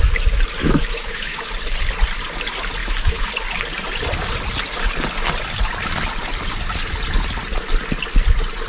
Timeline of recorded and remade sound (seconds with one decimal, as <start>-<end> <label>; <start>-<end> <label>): 0.0-0.6 recorded; 0.6-1.5 remade; 1.5-2.8 recorded; 2.8-3.3 remade; 3.3-8.7 recorded